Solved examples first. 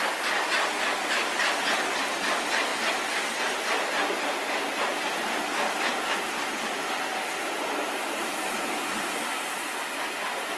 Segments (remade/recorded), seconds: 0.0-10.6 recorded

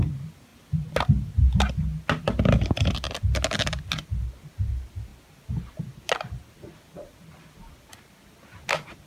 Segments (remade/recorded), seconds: 0.0-9.1 recorded

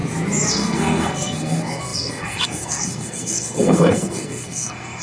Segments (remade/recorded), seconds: 0.0-0.5 recorded; 0.5-5.0 remade

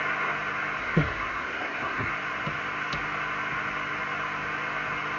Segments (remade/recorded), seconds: 0.0-0.8 recorded; 0.8-2.1 remade; 2.1-5.2 recorded

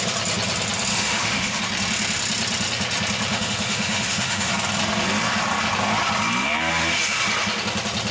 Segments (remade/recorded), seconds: 0.0-0.9 recorded; 0.9-1.6 remade; 1.6-3.3 recorded; 3.3-4.5 remade; 4.5-8.1 recorded

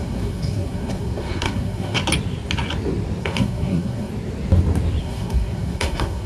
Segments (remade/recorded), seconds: 0.0-2.0 remade; 2.0-3.2 recorded; 3.2-4.1 remade; 4.1-5.0 recorded; 5.0-6.3 remade

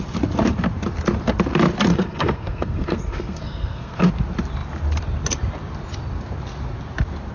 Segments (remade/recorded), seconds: 0.0-1.9 recorded; 1.9-4.1 remade; 4.1-7.3 recorded